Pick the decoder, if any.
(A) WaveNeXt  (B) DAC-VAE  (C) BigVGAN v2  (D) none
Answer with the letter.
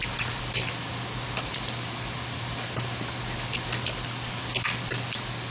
D